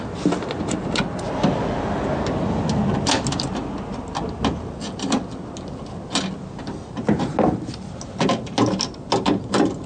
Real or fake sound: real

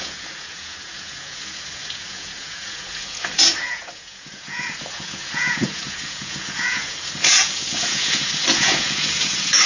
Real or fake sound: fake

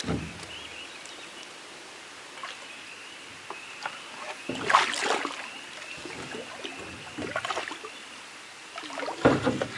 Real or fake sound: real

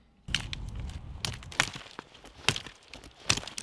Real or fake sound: real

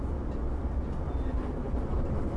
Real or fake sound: real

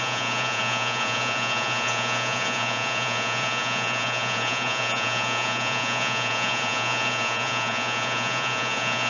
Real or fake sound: fake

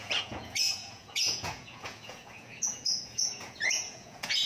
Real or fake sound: fake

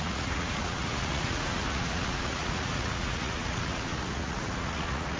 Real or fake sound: fake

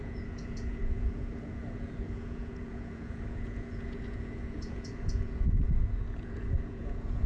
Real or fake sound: fake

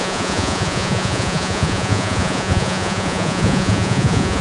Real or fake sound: fake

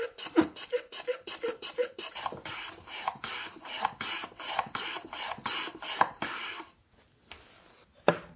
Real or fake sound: real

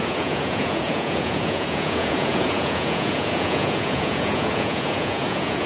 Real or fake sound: fake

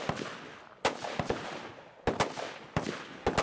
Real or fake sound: real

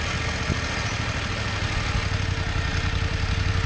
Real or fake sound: real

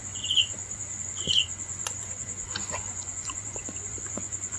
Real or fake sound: fake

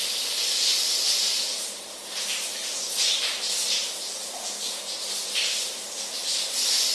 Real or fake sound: real